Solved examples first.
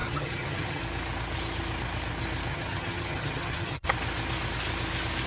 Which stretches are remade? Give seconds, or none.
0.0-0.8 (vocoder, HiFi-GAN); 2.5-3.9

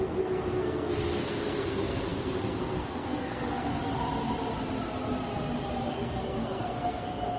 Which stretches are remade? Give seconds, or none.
0.0-3.8 (codec, SNAC); 5.9-7.4

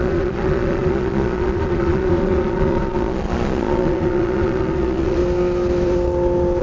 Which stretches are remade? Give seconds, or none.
0.0-5.2 (vocoder, Vocos)

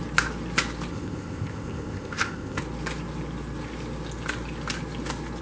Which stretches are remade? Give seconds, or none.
0.9-2.6 (codec, ZipCodec)

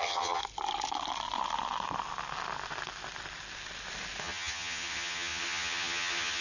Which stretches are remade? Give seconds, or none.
0.0-0.4 (vocoder, HiFi-GAN); 4.2-6.4